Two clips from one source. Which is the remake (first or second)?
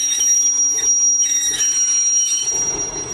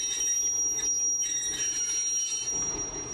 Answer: first